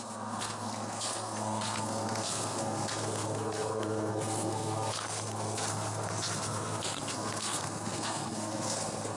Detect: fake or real fake